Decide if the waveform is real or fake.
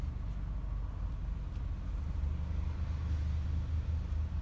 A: real